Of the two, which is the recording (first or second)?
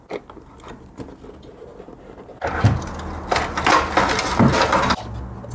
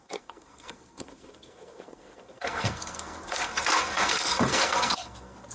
first